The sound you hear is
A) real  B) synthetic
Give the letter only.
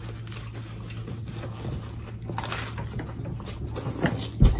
A